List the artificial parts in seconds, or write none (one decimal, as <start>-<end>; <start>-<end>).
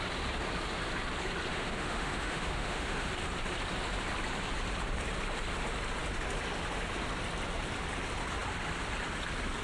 1.5-3.1